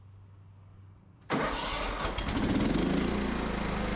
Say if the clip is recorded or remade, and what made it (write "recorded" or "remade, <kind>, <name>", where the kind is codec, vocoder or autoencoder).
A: recorded